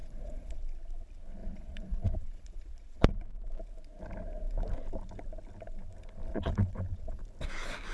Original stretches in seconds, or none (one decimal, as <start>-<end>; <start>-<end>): 0.6-1.4; 3.1-6.3; 7.2-7.9